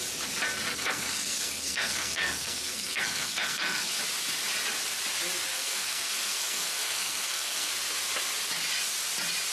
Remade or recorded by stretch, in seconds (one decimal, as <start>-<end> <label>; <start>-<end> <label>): 0.0-0.7 recorded; 0.7-4.0 remade; 4.0-5.5 recorded; 5.5-7.7 remade; 7.7-9.5 recorded